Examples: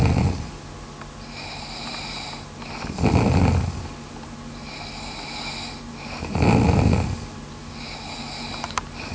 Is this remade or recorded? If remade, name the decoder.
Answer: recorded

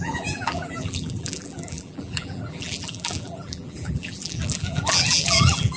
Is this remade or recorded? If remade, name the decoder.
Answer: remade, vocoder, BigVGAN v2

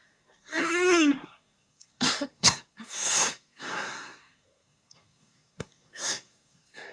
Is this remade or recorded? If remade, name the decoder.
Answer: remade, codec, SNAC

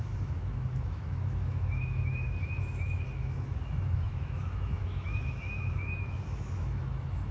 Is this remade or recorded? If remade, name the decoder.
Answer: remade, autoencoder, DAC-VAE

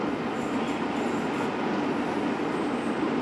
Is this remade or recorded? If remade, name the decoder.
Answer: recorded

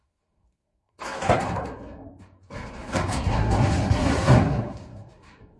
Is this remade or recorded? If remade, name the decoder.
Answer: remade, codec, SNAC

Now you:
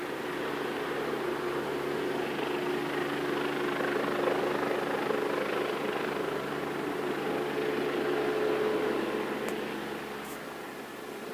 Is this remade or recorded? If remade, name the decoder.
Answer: recorded